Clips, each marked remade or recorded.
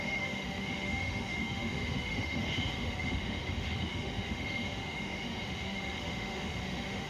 remade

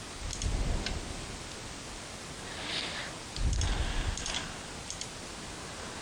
recorded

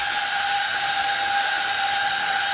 recorded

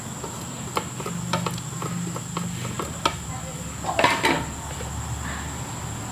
recorded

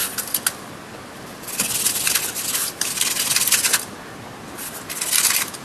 recorded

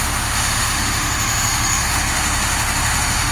remade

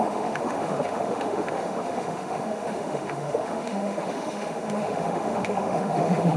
remade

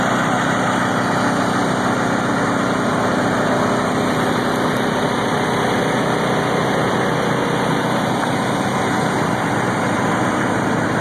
recorded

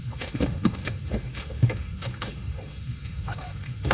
remade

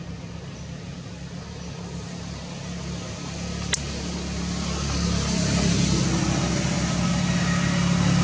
recorded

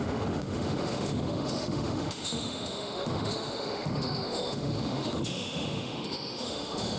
remade